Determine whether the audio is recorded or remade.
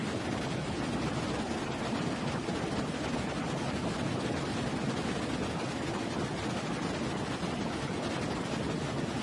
recorded